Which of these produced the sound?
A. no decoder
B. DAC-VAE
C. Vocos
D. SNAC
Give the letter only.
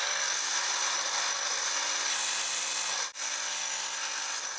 A